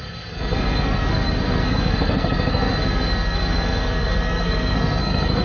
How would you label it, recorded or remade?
remade